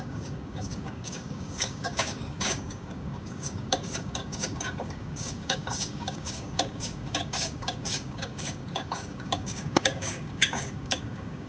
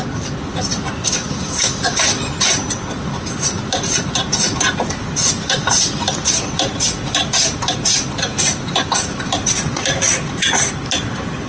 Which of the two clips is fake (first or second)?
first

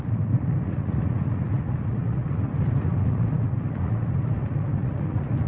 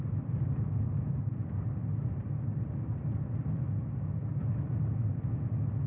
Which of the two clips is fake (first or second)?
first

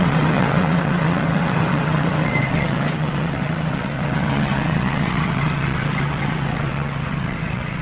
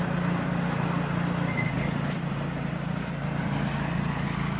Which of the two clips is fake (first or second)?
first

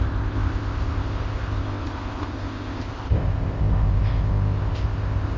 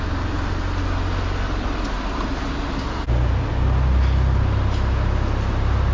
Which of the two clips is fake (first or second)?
first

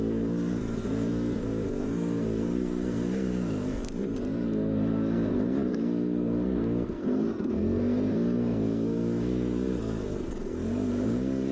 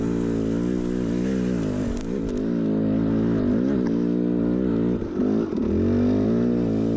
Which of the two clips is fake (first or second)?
first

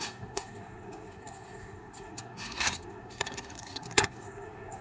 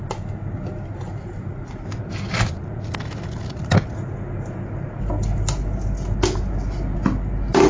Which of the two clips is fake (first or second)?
first